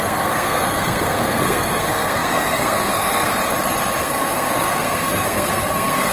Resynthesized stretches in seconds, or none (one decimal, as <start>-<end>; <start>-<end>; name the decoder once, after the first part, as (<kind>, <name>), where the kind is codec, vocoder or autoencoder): 0.0-3.3 (codec, SNAC); 4.0-6.1